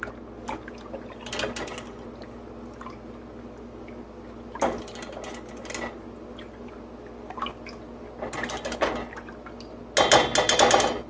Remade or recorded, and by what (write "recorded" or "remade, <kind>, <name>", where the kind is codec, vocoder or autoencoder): recorded